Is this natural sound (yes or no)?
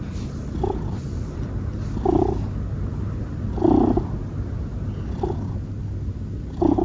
yes